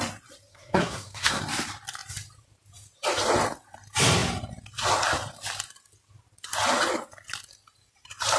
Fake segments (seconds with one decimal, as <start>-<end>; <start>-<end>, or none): 0.5-1.4